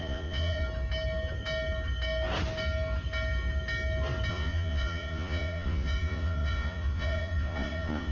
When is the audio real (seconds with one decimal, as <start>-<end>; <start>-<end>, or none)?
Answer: 0.6-4.3